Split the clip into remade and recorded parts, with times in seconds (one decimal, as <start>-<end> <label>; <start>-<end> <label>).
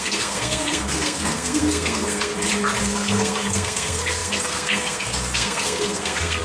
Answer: 0.0-2.3 remade; 2.3-2.8 recorded; 2.8-6.4 remade